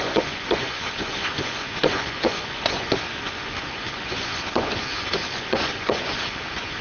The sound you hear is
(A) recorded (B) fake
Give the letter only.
B